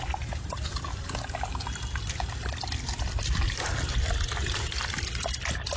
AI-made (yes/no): no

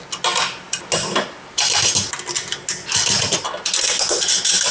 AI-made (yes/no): no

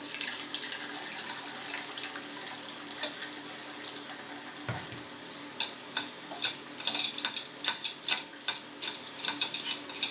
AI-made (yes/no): no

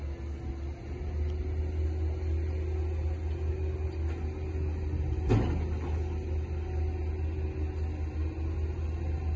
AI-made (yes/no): no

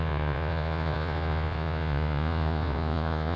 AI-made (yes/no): yes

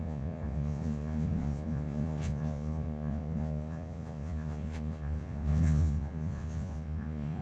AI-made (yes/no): yes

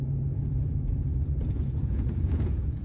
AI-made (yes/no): yes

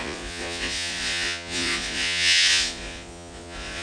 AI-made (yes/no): yes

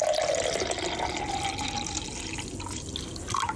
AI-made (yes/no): no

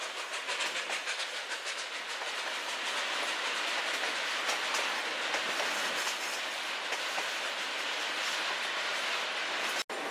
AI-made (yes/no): no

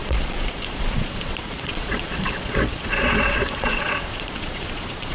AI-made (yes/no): yes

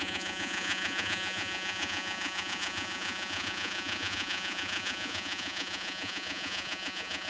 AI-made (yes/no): yes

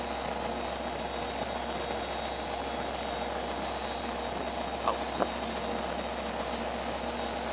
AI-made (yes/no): no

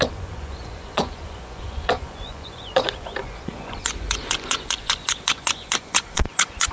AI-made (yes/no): yes